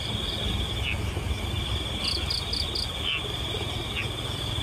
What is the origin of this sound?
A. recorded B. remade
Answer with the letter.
A